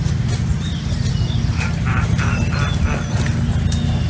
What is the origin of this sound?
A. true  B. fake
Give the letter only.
A